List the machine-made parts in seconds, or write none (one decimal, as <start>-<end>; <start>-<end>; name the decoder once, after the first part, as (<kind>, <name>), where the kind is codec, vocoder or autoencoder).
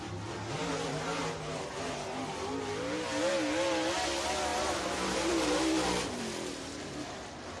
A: 0.6-2.3 (vocoder, BigVGAN v2); 4.5-6.2